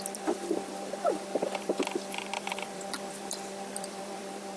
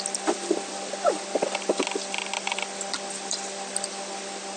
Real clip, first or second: second